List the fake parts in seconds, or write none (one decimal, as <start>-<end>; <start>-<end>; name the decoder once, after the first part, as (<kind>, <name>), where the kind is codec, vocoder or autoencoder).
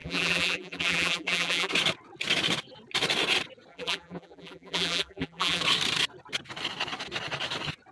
0.0-1.7 (vocoder, BigVGAN v2); 3.7-5.6